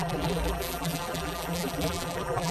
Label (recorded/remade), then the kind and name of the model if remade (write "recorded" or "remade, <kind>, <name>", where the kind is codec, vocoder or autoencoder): remade, vocoder, BigVGAN v2